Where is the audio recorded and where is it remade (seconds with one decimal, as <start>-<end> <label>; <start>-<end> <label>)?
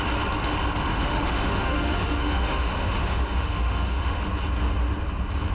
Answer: 0.0-0.9 recorded; 0.9-4.2 remade; 4.2-5.5 recorded